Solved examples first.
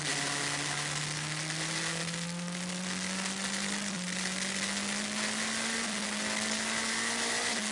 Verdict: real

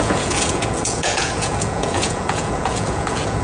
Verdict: fake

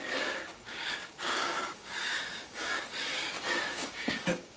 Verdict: fake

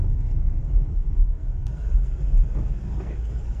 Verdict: fake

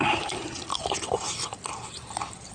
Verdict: fake